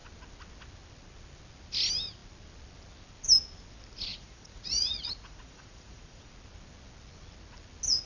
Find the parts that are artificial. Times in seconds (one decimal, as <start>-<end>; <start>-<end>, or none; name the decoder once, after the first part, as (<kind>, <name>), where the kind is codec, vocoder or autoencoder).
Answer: 4.1-6.3 (vocoder, Vocos)